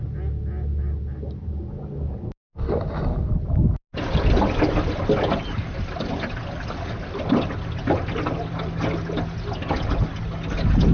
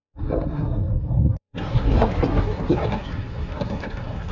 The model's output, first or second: second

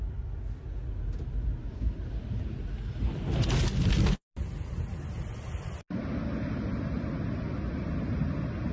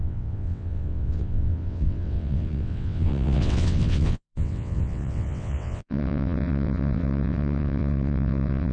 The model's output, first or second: second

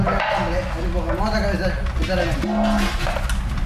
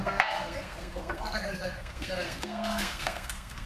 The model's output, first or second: second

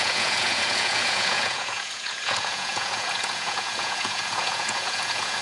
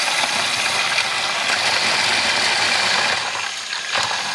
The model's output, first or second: first